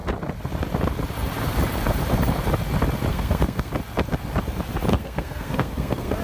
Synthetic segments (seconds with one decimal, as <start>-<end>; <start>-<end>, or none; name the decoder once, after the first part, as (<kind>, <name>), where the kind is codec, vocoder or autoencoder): 3.1-3.7 (codec, SNAC); 4.9-6.2

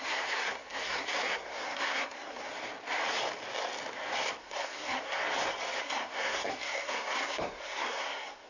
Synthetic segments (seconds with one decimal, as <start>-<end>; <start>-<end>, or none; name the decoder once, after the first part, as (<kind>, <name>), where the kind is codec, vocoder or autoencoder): 0.0-2.5 (codec, SNAC); 4.4-5.2; 5.8-8.5

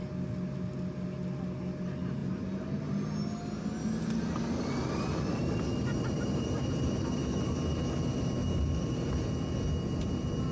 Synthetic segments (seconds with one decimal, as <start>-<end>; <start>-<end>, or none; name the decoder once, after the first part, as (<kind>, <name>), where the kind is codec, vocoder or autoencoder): none

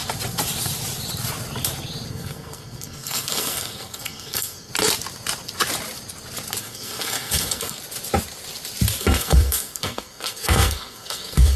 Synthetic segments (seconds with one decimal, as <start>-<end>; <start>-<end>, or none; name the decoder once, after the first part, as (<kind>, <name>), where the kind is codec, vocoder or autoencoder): 2.1-4.7 (codec, SNAC); 6.6-7.8; 9.0-11.6

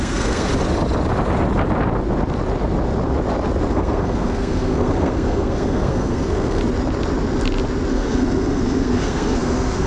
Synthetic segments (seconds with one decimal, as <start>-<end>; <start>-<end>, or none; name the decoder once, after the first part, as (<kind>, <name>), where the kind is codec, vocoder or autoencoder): 0.0-0.5 (codec, SNAC); 3.7-6.6; 7.9-9.9

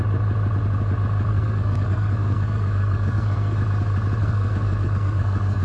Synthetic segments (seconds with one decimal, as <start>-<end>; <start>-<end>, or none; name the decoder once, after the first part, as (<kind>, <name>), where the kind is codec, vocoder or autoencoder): 1.3-3.6 (codec, SNAC); 4.2-5.6